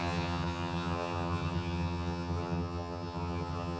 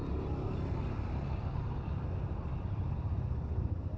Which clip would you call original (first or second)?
second